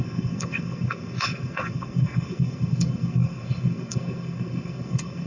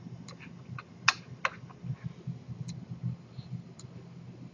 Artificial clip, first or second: first